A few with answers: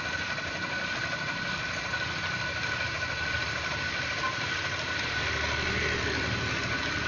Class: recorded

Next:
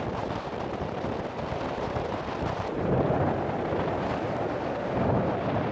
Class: remade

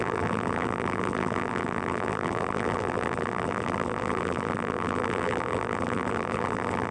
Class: remade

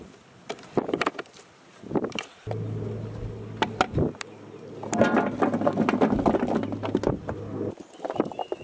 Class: recorded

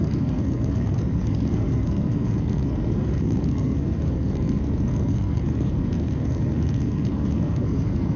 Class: remade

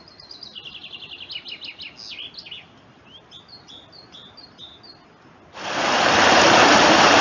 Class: recorded